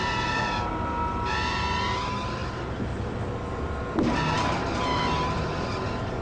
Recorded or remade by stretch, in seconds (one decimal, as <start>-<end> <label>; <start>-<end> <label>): 0.0-6.2 recorded